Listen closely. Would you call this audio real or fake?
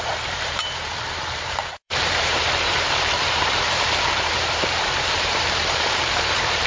fake